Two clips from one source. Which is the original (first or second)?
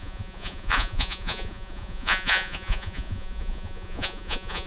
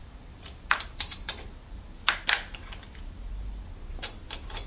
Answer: second